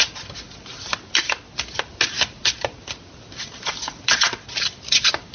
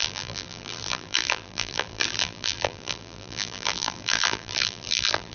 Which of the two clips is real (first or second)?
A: first